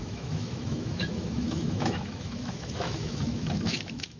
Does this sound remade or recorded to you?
remade